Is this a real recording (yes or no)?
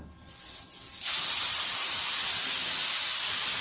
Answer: yes